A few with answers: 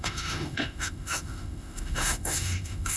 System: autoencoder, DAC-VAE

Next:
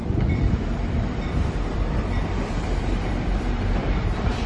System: vocoder, BigVGAN v2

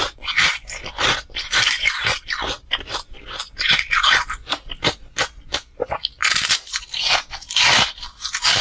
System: vocoder, BigVGAN v2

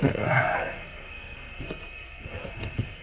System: codec, SNAC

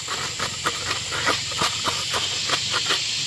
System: none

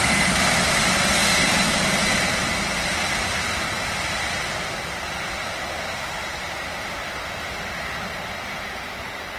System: none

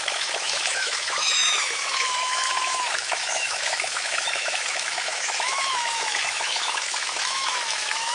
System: autoencoder, DAC-VAE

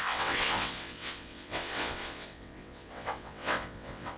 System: vocoder, WaveNeXt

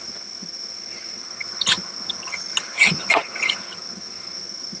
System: vocoder, HiFi-GAN